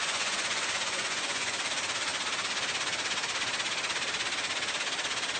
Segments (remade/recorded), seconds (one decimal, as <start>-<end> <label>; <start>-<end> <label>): 0.0-1.6 remade; 1.6-5.4 recorded